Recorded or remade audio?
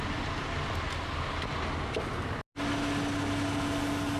recorded